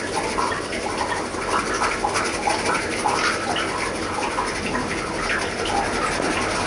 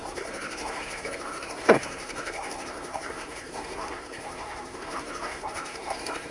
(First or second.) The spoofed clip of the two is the second